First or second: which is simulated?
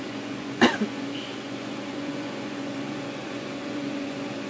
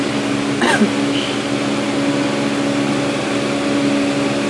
first